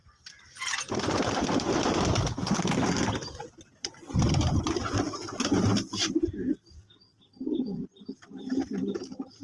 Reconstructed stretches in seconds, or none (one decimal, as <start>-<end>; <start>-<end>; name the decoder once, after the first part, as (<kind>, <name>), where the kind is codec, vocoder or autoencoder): 0.0-9.4 (vocoder, BigVGAN v2)